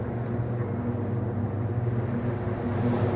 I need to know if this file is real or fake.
real